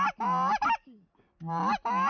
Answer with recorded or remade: recorded